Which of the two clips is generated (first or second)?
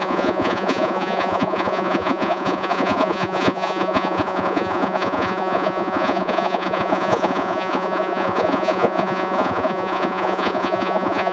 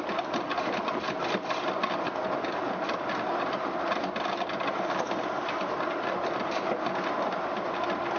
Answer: first